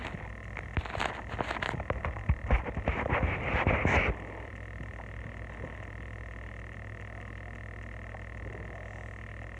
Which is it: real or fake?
real